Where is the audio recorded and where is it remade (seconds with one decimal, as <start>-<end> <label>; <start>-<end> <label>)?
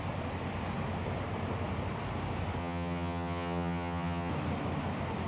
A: 0.0-2.6 recorded; 2.6-4.3 remade; 4.3-5.3 recorded